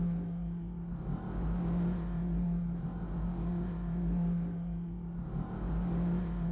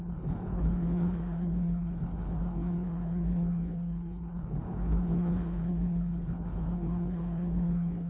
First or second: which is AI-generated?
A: second